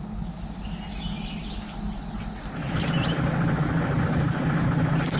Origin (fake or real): real